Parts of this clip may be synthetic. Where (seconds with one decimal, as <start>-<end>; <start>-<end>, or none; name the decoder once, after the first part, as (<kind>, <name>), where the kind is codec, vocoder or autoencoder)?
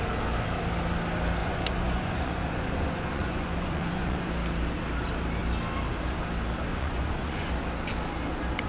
1.4-4.3 (vocoder, Vocos); 6.7-7.5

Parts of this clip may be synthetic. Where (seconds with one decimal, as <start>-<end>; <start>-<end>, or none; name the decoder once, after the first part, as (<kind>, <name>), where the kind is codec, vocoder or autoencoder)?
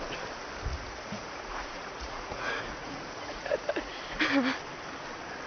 0.7-4.0 (vocoder, Vocos)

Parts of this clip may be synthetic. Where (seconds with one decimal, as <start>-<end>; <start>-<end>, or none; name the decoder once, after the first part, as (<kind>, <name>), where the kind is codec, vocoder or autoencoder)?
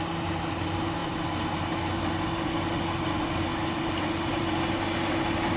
none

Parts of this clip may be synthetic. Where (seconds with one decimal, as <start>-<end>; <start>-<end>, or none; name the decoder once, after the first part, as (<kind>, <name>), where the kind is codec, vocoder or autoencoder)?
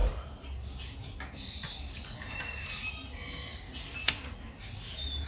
none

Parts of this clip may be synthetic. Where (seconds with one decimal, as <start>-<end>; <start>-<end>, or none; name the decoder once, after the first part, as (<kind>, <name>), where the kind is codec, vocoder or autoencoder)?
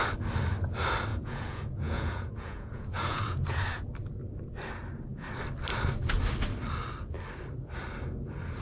1.1-3.6 (vocoder, Vocos)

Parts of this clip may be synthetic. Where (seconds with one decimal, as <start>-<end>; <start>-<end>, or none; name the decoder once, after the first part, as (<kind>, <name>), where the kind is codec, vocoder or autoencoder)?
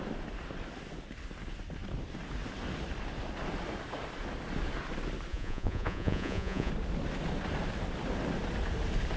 5.3-6.7 (vocoder, Vocos)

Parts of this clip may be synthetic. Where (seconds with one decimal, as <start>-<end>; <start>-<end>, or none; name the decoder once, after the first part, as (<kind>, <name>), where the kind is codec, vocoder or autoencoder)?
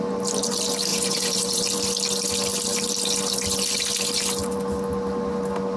0.9-1.6 (vocoder, Vocos)